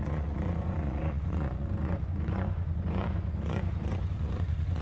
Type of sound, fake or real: fake